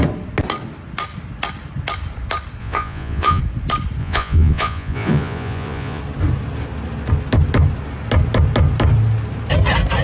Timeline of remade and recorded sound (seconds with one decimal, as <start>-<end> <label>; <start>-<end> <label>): 0.0-2.6 recorded; 2.6-3.4 remade; 3.4-4.0 recorded; 4.0-6.0 remade; 6.0-10.0 recorded